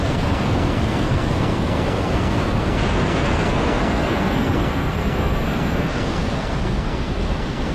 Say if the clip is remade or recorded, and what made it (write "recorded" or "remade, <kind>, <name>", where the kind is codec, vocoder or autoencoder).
remade, codec, SNAC